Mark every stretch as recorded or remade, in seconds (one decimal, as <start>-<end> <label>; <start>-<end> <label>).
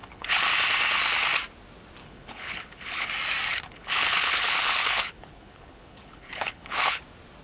0.0-0.5 remade; 0.5-2.0 recorded; 2.0-3.1 remade; 3.1-3.5 recorded; 3.5-7.0 remade; 7.0-7.4 recorded